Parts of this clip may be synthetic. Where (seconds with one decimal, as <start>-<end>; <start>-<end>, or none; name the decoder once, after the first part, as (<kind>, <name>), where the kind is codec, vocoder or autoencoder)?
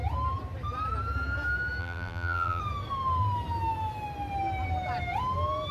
1.8-2.6 (vocoder, BigVGAN v2)